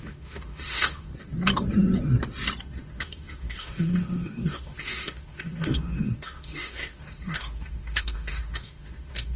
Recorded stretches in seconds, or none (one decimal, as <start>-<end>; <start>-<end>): 1.1-2.6